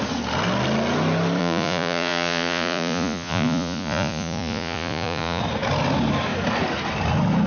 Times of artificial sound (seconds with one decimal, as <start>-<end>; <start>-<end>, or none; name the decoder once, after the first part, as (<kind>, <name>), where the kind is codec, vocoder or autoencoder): 1.4-5.4 (vocoder, Vocos)